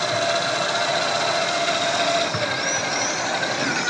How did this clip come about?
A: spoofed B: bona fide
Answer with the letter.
B